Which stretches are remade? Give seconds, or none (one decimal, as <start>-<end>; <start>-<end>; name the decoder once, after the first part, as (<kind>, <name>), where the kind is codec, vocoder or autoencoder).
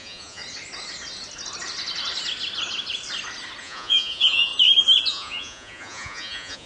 0.0-0.4 (vocoder, Vocos); 3.6-4.5; 5.1-6.7